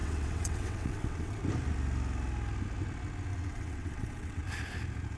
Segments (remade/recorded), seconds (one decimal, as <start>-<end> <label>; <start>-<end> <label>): 0.0-1.4 remade; 1.4-3.3 recorded; 3.3-4.4 remade; 4.4-5.2 recorded